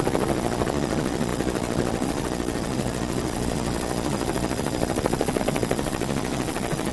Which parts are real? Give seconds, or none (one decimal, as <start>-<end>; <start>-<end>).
none